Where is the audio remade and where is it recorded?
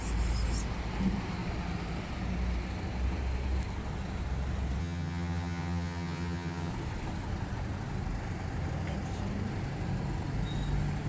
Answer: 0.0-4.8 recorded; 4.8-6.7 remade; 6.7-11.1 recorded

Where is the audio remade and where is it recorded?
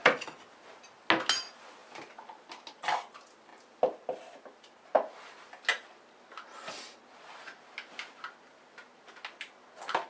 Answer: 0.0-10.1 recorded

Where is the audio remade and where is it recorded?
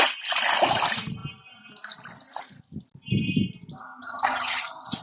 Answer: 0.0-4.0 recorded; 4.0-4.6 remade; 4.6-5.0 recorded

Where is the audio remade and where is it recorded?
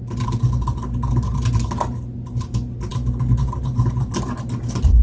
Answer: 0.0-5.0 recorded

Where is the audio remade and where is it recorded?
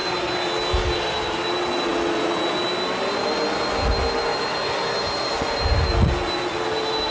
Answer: 0.0-7.1 recorded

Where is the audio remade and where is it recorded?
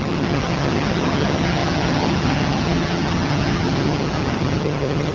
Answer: 0.0-5.1 remade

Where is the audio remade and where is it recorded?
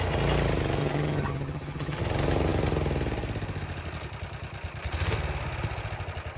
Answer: 0.0-0.8 recorded; 0.8-2.0 remade; 2.0-6.4 recorded